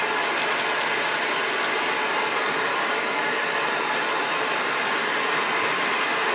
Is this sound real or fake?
real